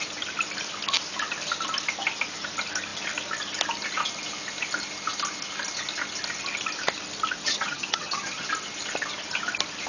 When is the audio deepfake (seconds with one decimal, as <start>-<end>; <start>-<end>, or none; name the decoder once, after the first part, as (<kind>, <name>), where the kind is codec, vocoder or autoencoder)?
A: 7.4-8.5 (vocoder, HiFi-GAN)